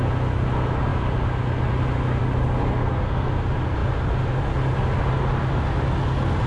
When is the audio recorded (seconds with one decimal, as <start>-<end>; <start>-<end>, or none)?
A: 0.0-2.8; 3.3-6.5